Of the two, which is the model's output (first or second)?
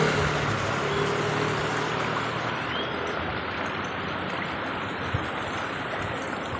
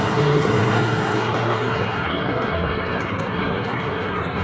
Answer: second